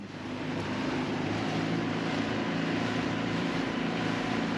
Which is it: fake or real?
fake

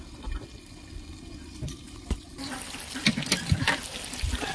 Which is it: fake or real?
real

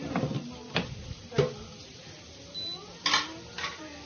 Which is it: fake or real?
real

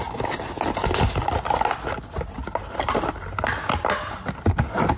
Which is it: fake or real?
real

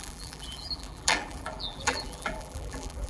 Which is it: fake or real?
fake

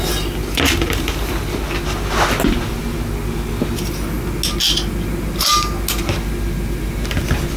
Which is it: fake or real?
real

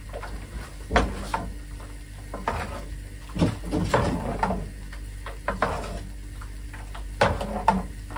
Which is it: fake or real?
real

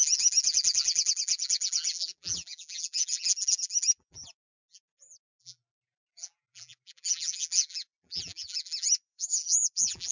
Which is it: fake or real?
fake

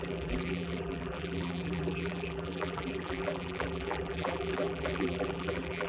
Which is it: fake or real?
fake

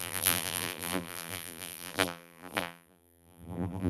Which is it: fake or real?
fake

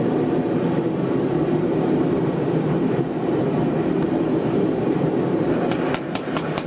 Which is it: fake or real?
fake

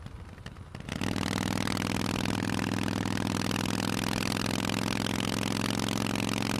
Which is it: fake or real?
real